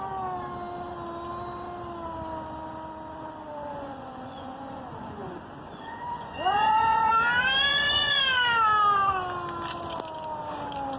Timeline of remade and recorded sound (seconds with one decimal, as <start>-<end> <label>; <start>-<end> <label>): 0.0-3.7 recorded; 3.7-7.1 remade; 7.1-7.7 recorded; 7.7-8.2 remade; 8.2-11.0 recorded